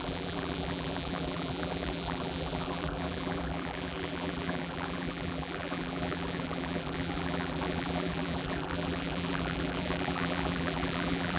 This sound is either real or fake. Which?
fake